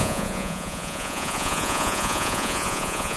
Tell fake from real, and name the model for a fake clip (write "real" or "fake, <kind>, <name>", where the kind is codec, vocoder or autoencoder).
fake, vocoder, Vocos